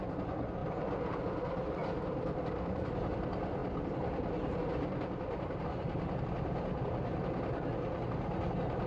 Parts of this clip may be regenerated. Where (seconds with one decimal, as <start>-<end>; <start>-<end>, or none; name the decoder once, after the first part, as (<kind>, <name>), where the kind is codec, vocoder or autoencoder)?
0.6-1.2 (vocoder, BigVGAN v2); 1.8-3.0; 3.6-6.2